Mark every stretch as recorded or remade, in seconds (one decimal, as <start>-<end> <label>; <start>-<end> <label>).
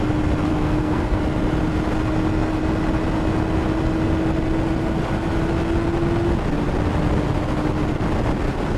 0.0-0.5 recorded; 0.5-1.2 remade; 1.2-8.8 recorded